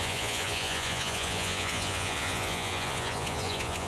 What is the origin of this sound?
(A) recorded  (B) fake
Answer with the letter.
B